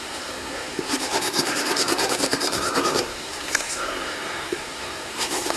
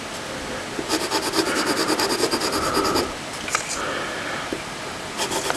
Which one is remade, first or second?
first